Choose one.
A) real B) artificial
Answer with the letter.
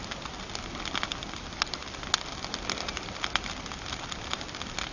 A